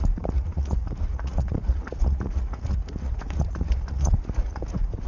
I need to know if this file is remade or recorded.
remade